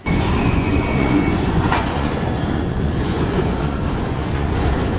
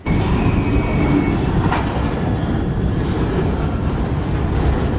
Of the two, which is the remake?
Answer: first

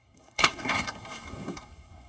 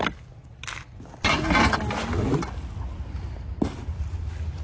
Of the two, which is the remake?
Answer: first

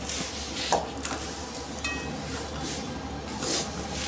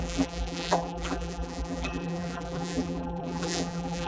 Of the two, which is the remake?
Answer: second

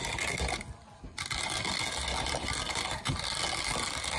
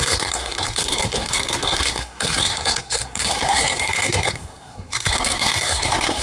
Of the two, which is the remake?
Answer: second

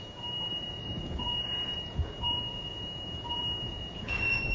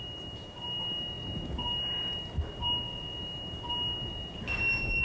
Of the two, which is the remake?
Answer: first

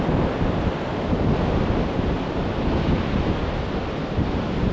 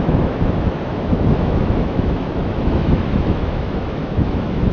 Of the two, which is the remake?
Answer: second